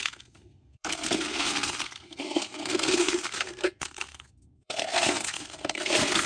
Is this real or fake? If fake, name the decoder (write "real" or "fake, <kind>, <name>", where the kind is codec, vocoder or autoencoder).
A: fake, codec, SNAC